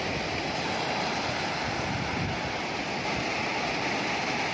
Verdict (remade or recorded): recorded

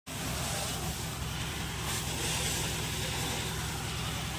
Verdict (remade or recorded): recorded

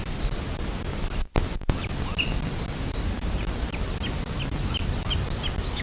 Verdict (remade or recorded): recorded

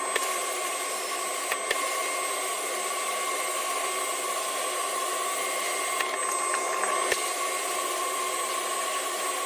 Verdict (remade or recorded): recorded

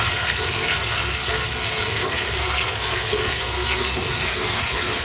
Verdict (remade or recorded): remade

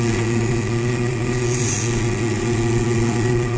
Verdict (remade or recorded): remade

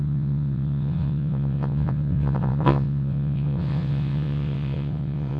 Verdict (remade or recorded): remade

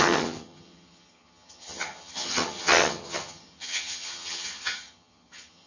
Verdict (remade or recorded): remade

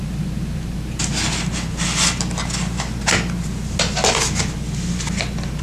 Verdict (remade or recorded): recorded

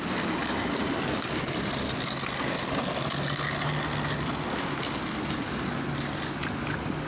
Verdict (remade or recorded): recorded